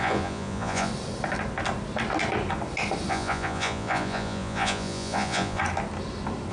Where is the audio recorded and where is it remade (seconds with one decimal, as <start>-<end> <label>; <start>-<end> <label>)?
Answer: 0.0-0.9 remade; 0.9-3.1 recorded; 3.1-5.6 remade; 5.6-6.5 recorded